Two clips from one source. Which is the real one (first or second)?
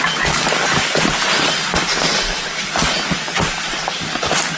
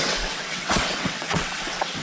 first